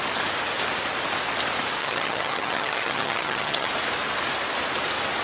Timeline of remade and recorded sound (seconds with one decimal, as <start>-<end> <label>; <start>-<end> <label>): 0.0-1.8 recorded; 1.8-3.7 remade; 3.7-5.2 recorded